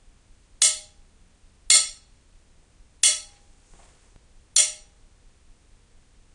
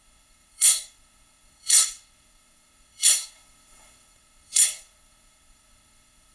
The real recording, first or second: first